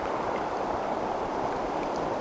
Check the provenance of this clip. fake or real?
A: real